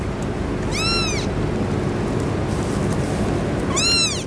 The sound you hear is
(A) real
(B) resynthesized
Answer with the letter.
A